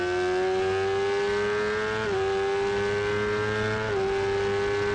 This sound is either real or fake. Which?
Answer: real